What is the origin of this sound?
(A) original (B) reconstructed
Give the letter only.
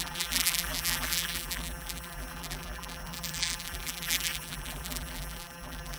B